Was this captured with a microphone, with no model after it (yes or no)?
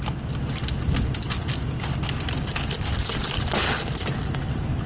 yes